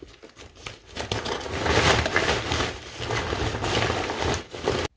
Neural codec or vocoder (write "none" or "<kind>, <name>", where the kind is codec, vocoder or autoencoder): none